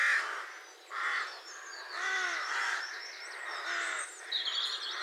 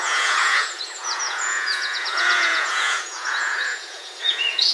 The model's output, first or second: second